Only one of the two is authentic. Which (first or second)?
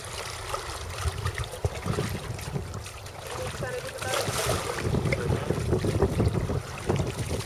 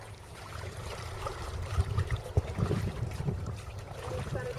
first